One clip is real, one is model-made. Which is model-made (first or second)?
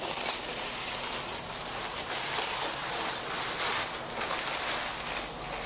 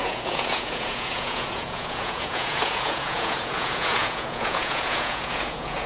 second